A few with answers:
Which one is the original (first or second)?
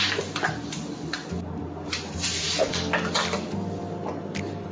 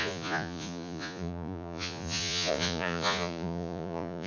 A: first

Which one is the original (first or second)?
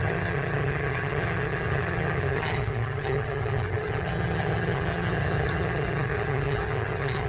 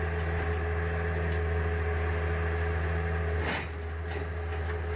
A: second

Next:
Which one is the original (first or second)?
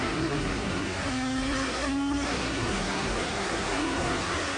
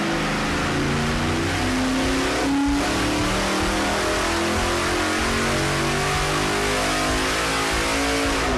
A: second